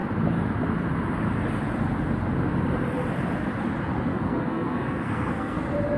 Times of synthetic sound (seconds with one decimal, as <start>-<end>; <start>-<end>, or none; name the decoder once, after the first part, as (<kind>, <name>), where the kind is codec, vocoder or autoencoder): 4.1-5.6 (codec, SNAC)